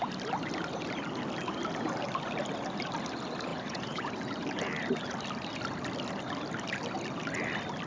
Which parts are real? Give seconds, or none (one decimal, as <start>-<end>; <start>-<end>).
0.0-3.5; 4.1-7.9